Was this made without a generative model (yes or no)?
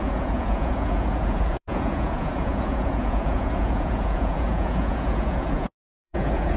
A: no